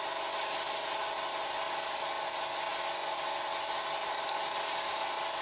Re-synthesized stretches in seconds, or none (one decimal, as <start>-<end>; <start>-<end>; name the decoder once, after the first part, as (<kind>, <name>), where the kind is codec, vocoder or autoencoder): none

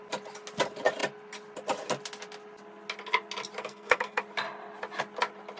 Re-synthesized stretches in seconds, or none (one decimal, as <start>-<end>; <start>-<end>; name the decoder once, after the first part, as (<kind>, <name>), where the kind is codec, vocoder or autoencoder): 3.6-4.2 (codec, SNAC)

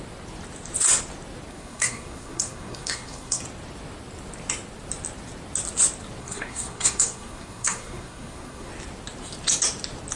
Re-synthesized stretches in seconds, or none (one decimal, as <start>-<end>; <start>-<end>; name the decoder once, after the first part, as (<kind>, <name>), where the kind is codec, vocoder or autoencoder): 1.5-3.4 (codec, SNAC); 6.2-8.7

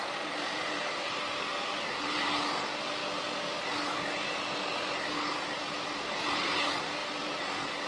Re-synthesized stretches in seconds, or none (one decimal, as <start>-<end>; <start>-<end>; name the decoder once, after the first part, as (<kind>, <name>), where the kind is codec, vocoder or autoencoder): none

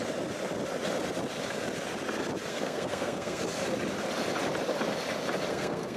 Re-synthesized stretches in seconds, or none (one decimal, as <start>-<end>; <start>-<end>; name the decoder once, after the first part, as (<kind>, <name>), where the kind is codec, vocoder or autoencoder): 2.5-3.4 (codec, SNAC); 5.5-6.0

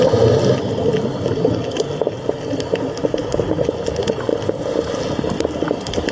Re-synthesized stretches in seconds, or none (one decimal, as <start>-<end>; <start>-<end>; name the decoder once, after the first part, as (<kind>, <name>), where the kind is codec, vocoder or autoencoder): none

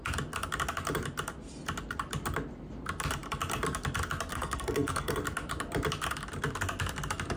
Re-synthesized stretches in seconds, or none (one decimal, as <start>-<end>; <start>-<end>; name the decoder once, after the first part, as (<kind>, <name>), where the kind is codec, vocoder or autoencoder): 4.3-5.2 (codec, SNAC)

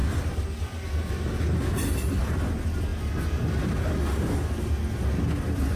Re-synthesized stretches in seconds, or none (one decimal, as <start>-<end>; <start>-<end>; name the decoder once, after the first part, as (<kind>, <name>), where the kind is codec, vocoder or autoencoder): none